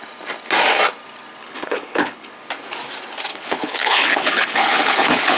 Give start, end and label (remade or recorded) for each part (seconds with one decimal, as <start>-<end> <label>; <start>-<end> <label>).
0.0-1.4 recorded; 1.4-2.3 remade; 2.3-3.3 recorded; 3.3-5.4 remade

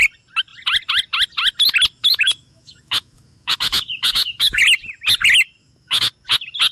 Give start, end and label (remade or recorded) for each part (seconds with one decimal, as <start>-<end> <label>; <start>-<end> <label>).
0.0-2.0 recorded; 2.0-4.6 remade; 4.6-5.6 recorded; 5.6-6.1 remade; 6.1-6.7 recorded

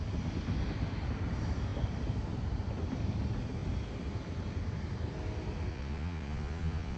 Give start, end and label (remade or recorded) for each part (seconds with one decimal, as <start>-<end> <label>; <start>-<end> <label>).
0.0-5.7 recorded; 5.7-7.0 remade

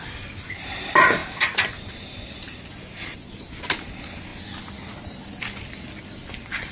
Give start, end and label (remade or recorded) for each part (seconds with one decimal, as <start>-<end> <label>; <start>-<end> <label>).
0.0-6.7 recorded

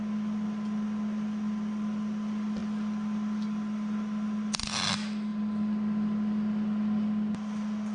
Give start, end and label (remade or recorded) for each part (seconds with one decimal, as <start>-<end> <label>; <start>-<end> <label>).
0.0-7.9 recorded

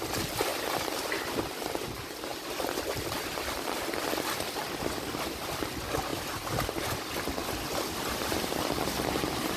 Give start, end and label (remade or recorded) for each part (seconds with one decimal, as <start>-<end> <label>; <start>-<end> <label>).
0.0-0.5 recorded; 0.5-1.1 remade; 1.1-2.3 recorded; 2.3-3.0 remade; 3.0-6.1 recorded; 6.1-6.8 remade; 6.8-9.6 recorded